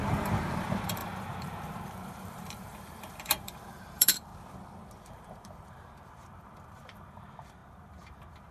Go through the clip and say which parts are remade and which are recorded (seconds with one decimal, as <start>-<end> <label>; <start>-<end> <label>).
0.0-4.3 remade; 4.3-5.1 recorded; 5.1-8.5 remade